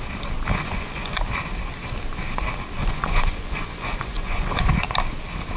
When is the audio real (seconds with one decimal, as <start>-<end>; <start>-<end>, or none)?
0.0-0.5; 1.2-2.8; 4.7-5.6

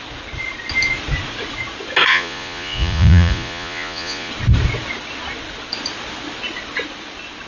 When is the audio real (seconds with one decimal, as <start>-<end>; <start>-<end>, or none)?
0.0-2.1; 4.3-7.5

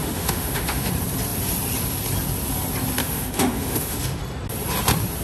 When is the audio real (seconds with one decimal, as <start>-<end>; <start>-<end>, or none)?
0.9-3.0; 4.2-5.2

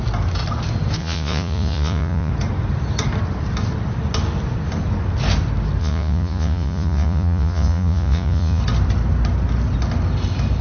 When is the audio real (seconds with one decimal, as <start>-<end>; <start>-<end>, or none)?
0.0-1.0; 2.3-5.8; 8.6-10.6

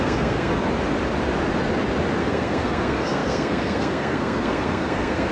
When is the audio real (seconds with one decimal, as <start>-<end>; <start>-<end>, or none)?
0.5-2.2

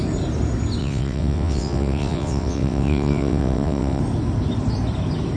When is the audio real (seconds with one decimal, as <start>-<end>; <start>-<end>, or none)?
0.0-0.8; 4.0-5.4

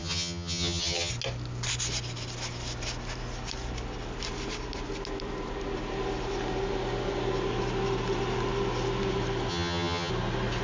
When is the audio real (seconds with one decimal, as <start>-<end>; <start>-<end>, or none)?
1.1-9.5; 10.1-10.6